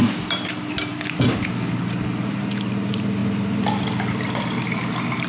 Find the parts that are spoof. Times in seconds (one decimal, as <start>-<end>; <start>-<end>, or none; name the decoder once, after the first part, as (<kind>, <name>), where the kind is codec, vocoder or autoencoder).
0.0-0.9 (vocoder, BigVGAN v2); 2.7-5.3